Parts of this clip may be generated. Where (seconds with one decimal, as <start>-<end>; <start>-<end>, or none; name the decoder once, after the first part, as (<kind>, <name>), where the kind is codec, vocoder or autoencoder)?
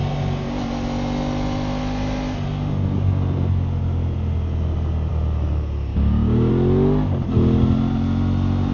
5.9-6.5 (codec, DAC)